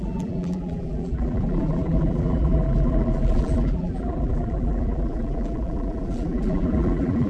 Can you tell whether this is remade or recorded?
remade